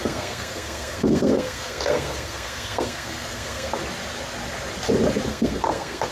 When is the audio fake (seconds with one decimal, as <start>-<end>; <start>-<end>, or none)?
0.0-3.7; 5.3-6.1